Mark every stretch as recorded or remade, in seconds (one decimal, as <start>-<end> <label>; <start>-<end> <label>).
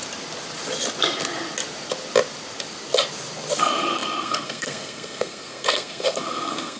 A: 0.0-3.6 recorded; 3.6-6.8 remade